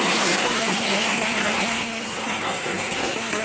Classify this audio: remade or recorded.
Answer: remade